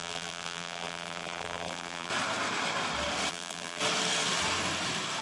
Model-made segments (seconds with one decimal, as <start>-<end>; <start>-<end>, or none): 0.0-2.1; 3.3-3.8